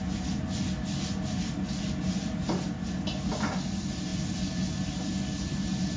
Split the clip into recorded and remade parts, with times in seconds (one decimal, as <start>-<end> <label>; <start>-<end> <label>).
0.0-6.0 recorded